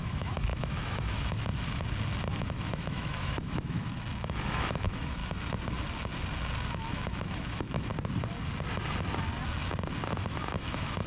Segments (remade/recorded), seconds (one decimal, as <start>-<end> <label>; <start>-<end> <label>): 0.0-1.5 remade; 1.5-2.3 recorded; 2.3-5.2 remade; 5.2-6.7 recorded; 6.7-7.9 remade; 7.9-10.3 recorded; 10.3-11.1 remade